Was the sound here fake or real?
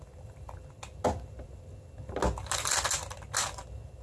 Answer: real